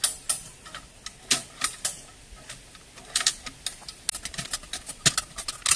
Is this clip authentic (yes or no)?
yes